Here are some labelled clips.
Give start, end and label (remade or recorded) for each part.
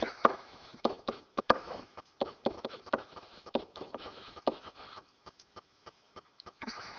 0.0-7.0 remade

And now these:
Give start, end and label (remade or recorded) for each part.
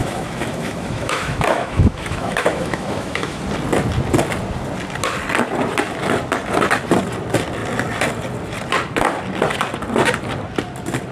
0.0-3.4 remade; 3.4-11.1 recorded